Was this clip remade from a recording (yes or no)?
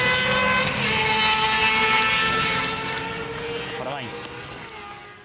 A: no